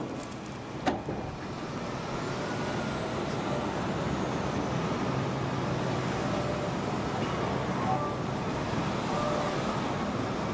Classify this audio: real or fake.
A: real